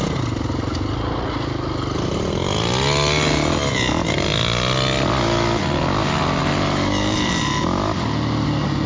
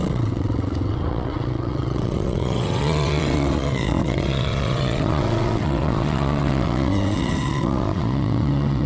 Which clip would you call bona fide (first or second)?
first